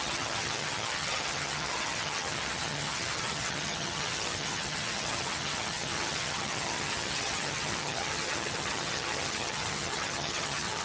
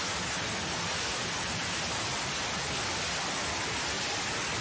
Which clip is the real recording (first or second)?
second